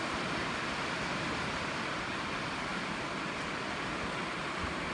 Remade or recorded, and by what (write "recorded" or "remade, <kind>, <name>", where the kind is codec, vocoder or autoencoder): remade, vocoder, BigVGAN v2